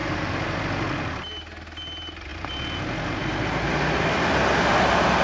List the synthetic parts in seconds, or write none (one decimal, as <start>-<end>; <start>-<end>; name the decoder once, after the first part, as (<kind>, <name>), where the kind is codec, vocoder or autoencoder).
0.0-0.6 (vocoder, BigVGAN v2)